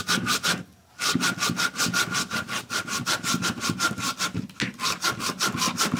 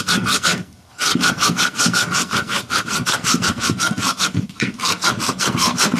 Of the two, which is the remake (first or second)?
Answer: second